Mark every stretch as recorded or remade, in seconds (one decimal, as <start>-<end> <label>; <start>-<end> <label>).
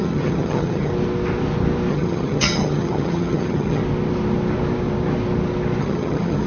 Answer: 0.0-0.9 remade; 0.9-1.9 recorded; 1.9-3.8 remade; 3.8-5.8 recorded; 5.8-6.5 remade